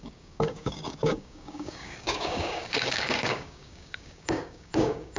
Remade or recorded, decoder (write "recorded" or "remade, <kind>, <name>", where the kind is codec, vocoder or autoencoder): remade, codec, DAC